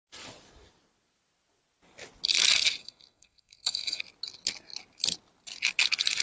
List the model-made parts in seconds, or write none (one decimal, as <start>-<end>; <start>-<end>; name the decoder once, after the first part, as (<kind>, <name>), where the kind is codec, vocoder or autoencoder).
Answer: 2.8-4.0 (codec, SNAC)